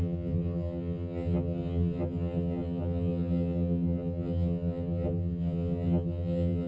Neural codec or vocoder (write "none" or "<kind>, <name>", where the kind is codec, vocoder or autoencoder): vocoder, HiFi-GAN